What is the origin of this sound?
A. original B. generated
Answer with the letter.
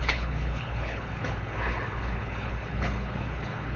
B